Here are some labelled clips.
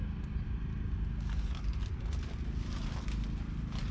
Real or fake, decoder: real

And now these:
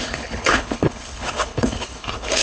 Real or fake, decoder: fake, codec, HILCodec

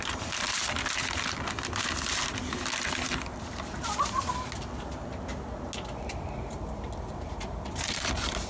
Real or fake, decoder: real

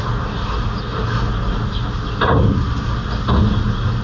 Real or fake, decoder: real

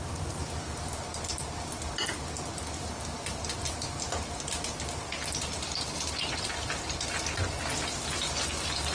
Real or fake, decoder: real